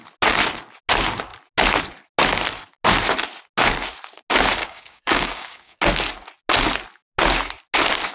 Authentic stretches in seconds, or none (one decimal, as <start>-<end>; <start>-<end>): 0.0-4.6; 5.8-8.1